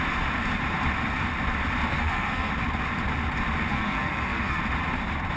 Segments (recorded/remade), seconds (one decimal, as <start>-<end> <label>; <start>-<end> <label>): 0.0-1.9 recorded; 1.9-2.5 remade; 2.5-3.7 recorded; 3.7-4.6 remade; 4.6-5.4 recorded